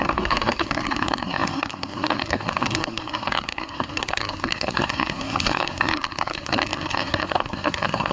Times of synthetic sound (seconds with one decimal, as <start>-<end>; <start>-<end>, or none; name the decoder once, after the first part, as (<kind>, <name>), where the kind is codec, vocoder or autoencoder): 0.0-8.1 (codec, SNAC)